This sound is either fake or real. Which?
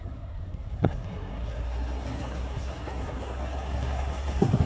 fake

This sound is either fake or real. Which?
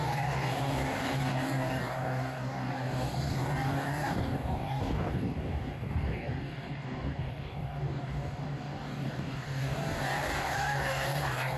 fake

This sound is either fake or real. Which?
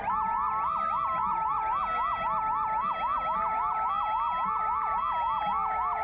real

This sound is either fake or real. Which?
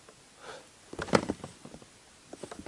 real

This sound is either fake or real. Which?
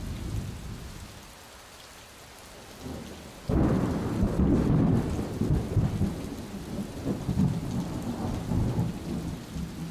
real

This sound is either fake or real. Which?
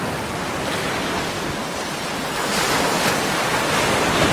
real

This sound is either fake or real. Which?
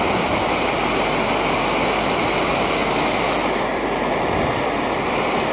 real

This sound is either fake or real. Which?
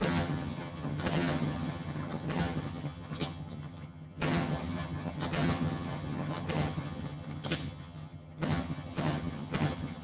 fake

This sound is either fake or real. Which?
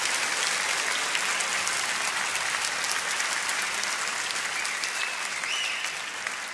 real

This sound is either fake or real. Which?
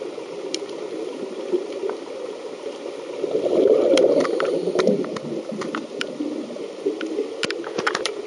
real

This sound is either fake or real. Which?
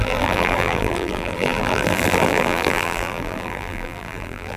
fake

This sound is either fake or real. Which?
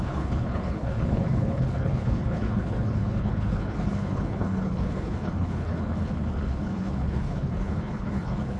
fake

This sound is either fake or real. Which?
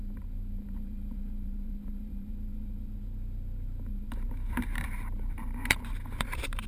fake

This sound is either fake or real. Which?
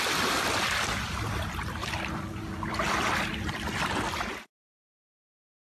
real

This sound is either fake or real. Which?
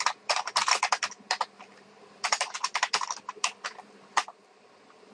fake